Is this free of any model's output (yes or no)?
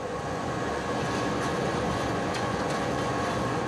no